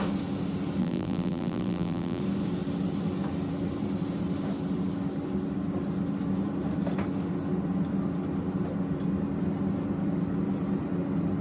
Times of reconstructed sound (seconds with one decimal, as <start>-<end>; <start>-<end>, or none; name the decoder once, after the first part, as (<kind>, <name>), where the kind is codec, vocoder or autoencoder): 0.8-2.2 (vocoder, BigVGAN v2)